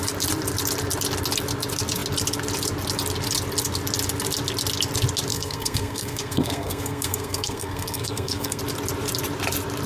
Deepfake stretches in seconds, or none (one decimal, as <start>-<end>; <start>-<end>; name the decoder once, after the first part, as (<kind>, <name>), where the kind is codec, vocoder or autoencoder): 5.3-8.6 (codec, SNAC)